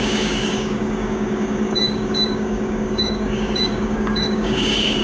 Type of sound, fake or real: fake